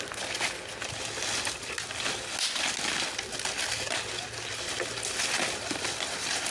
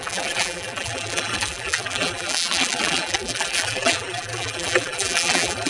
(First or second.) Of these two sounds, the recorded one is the first